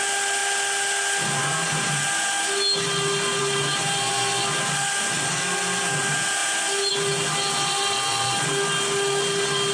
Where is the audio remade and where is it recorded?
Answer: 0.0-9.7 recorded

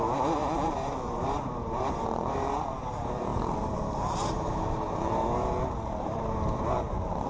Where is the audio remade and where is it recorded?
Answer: 0.0-7.3 remade